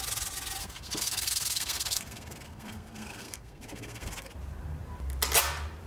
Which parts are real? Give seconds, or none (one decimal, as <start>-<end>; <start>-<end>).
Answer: 0.0-0.6; 4.1-5.9